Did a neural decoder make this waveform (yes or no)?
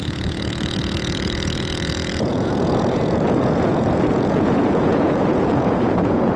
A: yes